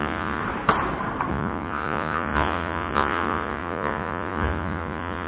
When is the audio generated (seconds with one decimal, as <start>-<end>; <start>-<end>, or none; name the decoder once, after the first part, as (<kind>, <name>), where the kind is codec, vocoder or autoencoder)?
0.0-0.4 (vocoder, Vocos); 1.3-5.3